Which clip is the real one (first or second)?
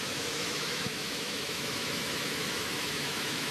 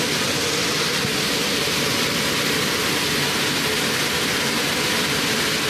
second